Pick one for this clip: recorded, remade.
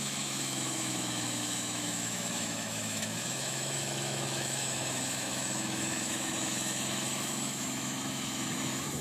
remade